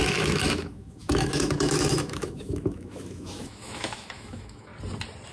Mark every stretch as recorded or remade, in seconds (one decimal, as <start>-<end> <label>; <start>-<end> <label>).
0.0-4.7 remade; 4.7-5.3 recorded